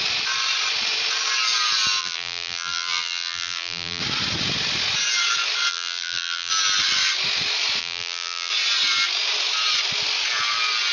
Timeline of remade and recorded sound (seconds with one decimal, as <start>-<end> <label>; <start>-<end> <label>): 0.0-2.0 recorded; 2.0-4.0 remade; 4.0-5.7 recorded; 5.7-6.5 remade; 6.5-7.8 recorded; 7.8-8.5 remade; 8.5-10.9 recorded